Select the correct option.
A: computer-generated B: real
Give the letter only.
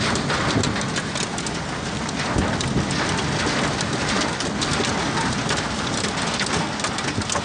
B